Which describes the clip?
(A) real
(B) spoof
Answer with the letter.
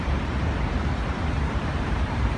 B